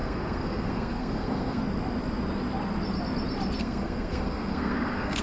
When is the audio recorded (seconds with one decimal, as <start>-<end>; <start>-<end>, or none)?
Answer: 1.6-3.6